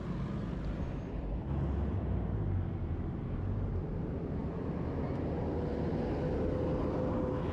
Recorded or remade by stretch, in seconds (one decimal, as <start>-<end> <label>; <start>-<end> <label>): 0.0-4.4 recorded; 4.4-5.2 remade; 5.2-7.5 recorded